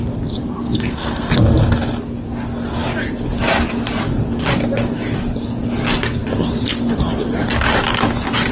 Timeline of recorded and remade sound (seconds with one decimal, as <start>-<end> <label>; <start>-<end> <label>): 0.0-0.4 recorded; 0.4-1.3 remade; 1.3-8.5 recorded